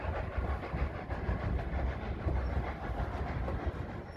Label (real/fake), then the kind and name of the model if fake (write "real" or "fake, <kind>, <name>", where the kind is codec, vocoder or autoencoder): real